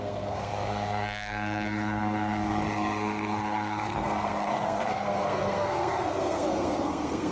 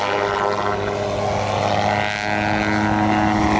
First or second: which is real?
second